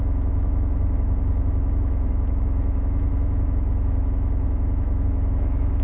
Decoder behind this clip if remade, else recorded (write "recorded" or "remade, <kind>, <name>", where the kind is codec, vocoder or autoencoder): remade, autoencoder, DAC-VAE